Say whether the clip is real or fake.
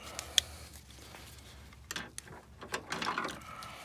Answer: real